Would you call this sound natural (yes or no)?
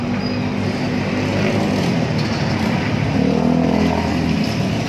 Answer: yes